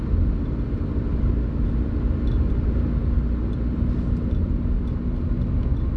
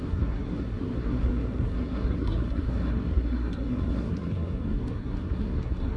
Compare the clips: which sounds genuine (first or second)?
first